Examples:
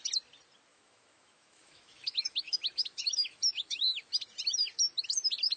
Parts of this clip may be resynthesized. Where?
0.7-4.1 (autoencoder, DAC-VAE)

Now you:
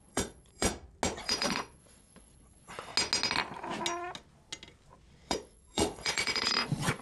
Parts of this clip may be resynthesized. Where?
0.0-0.7 (vocoder, Vocos); 1.2-2.9; 5.3-7.0

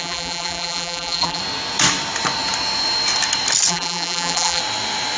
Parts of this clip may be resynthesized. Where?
0.0-1.4 (vocoder, BigVGAN v2); 3.7-4.6

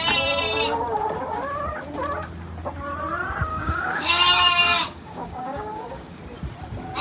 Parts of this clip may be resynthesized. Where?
3.5-6.2 (codec, DAC)